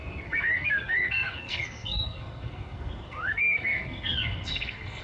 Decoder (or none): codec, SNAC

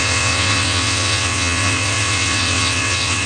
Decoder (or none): vocoder, WaveNeXt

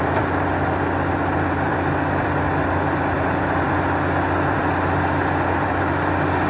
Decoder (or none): vocoder, BigVGAN v2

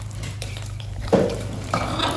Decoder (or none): vocoder, BigVGAN v2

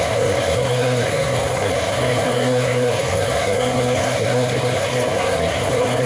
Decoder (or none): codec, SNAC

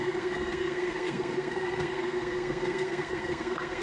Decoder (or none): codec, SNAC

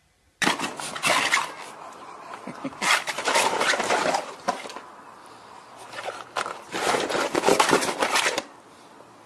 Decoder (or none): vocoder, BigVGAN v2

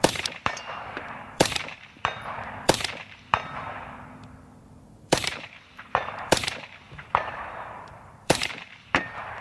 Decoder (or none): vocoder, BigVGAN v2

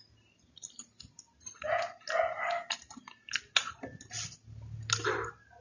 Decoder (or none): none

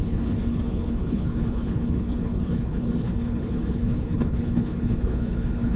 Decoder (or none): codec, HILCodec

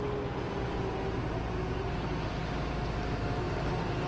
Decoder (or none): none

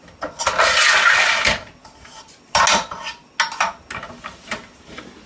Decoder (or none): none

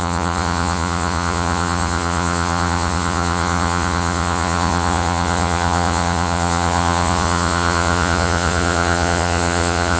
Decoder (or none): vocoder, Vocos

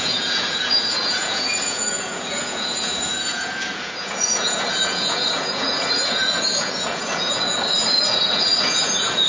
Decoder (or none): vocoder, Vocos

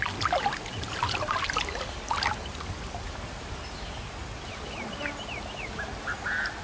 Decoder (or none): none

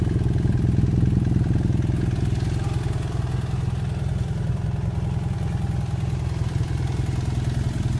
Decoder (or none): none